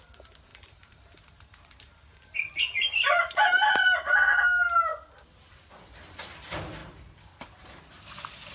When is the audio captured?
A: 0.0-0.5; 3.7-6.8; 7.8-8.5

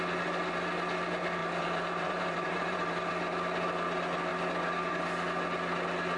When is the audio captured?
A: 0.0-1.4; 3.1-6.2

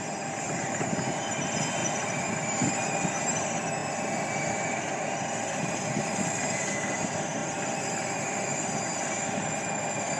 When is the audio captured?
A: 0.0-10.2

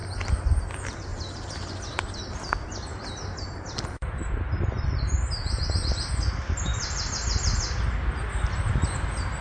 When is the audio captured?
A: 0.6-1.1; 2.2-2.9; 4.9-6.7; 7.2-9.4

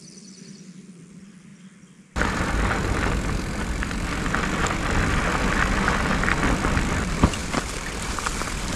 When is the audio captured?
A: 1.5-6.0